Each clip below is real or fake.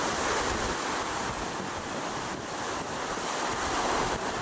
real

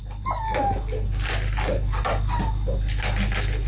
real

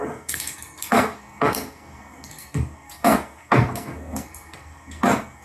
fake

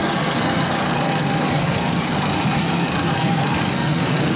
fake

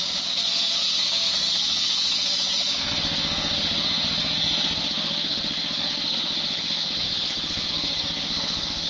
fake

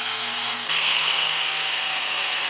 fake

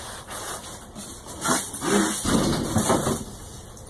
real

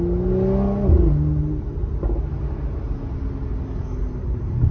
real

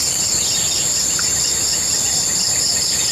real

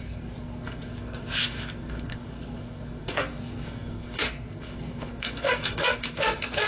fake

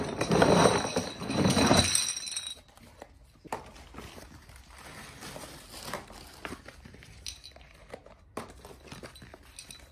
real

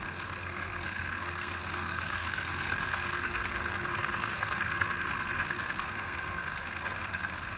fake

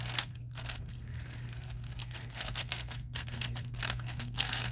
fake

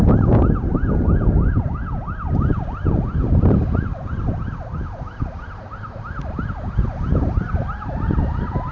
real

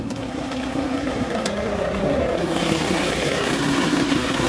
fake